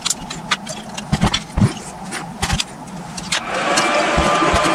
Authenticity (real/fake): real